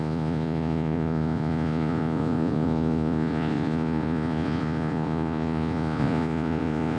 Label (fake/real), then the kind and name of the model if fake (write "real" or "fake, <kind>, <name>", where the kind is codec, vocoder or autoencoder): fake, vocoder, Vocos